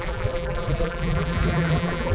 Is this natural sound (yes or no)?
no